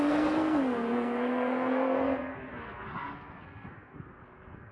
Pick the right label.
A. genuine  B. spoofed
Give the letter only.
B